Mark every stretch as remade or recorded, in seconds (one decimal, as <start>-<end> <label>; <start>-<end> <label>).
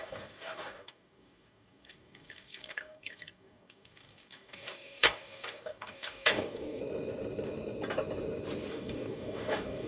0.0-6.8 remade; 6.8-8.7 recorded; 8.7-9.9 remade